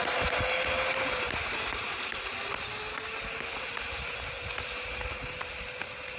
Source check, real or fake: real